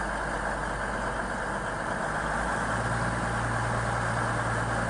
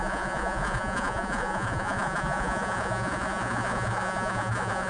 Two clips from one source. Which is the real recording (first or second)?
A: first